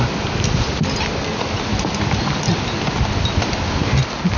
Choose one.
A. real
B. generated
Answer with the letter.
A